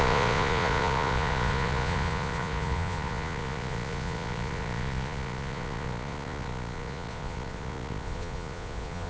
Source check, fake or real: fake